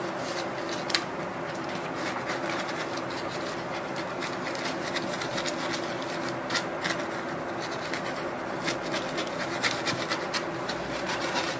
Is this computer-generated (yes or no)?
no